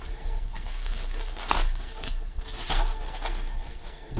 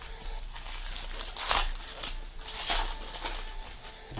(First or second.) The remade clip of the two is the first